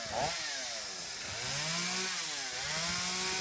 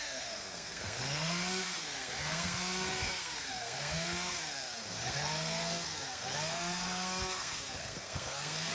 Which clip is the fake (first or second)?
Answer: second